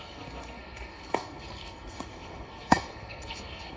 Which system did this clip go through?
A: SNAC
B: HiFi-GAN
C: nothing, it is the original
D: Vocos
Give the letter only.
A